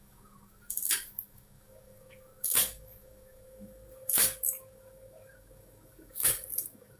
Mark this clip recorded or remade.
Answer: remade